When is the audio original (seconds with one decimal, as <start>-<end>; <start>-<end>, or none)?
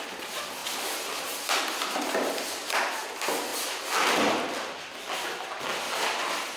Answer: 0.0-6.6